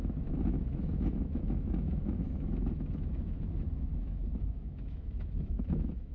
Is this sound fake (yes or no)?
yes